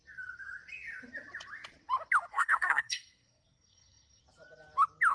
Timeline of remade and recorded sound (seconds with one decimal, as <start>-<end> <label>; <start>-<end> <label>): 0.0-2.3 recorded; 2.3-4.2 remade; 4.2-5.1 recorded